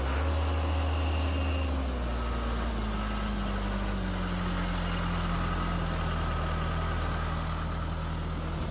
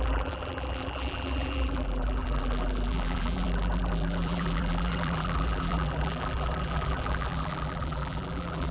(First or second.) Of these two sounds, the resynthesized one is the second